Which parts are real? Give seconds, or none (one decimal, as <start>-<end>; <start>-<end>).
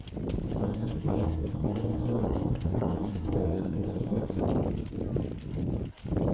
0.0-0.6; 4.4-6.3